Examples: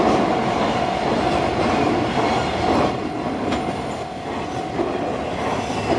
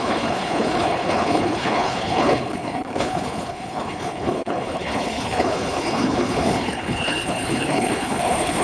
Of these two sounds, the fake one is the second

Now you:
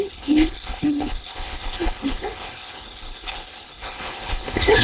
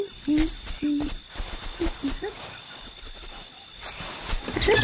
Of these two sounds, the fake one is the first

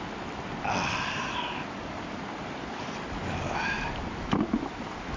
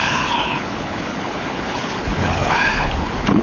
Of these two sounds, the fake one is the second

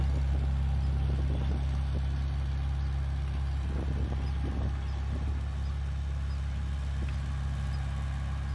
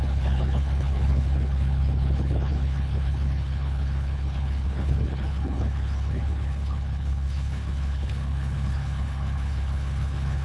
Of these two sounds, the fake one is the second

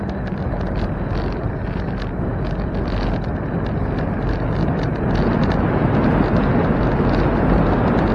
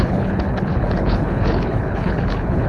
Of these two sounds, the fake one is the second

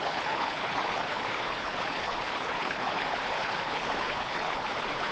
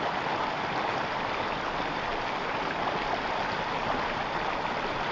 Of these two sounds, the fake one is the first